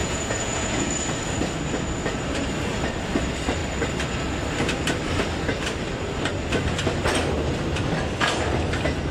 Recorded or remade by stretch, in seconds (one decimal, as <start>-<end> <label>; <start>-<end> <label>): 0.0-0.9 remade; 0.9-9.1 recorded